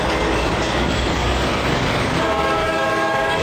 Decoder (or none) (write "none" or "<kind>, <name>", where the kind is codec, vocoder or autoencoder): codec, DAC